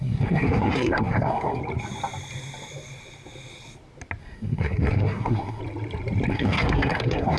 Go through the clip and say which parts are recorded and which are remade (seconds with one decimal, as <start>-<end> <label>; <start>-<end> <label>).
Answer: 0.0-1.6 remade; 1.6-4.2 recorded; 4.2-5.6 remade; 5.6-6.3 recorded; 6.3-7.4 remade

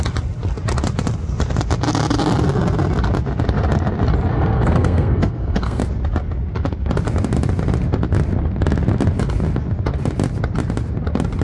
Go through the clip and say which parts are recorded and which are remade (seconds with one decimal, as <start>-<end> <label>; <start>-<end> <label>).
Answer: 0.0-4.3 recorded; 4.3-5.8 remade; 5.8-11.4 recorded

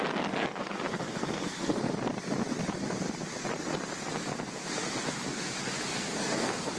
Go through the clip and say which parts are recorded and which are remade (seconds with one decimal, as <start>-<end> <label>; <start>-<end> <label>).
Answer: 0.0-0.4 recorded; 0.4-1.8 remade; 1.8-5.9 recorded; 5.9-6.8 remade

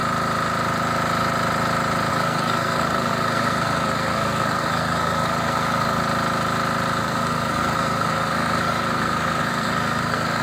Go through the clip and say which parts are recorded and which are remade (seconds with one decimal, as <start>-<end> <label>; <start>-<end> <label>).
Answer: 0.0-2.1 recorded; 2.1-6.0 remade; 6.0-7.0 recorded; 7.0-10.4 remade

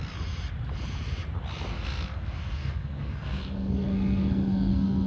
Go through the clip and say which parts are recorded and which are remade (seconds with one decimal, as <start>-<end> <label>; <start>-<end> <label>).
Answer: 0.0-1.7 recorded; 1.7-5.1 remade

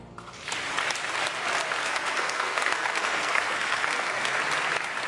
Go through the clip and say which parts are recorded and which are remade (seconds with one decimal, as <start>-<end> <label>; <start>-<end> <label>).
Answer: 0.0-1.8 recorded; 1.8-4.4 remade; 4.4-5.1 recorded

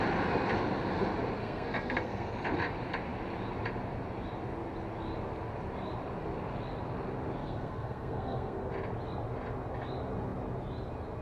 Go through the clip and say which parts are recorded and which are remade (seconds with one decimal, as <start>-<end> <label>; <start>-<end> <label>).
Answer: 0.0-1.4 recorded; 1.4-2.3 remade; 2.3-7.4 recorded; 7.4-8.7 remade; 8.7-11.2 recorded